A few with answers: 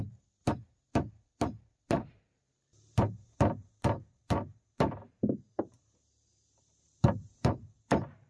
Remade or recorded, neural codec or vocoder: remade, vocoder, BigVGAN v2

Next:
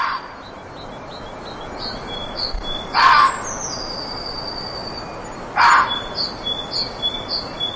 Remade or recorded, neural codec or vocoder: recorded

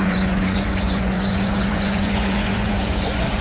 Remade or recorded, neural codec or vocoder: remade, vocoder, Vocos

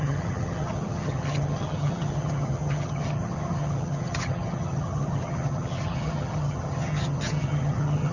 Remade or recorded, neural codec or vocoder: remade, vocoder, HiFi-GAN